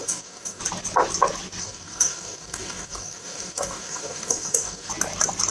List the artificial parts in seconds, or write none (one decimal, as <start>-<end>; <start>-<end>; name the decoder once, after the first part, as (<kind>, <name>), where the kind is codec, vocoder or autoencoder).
0.0-0.6 (codec, DAC); 1.6-4.9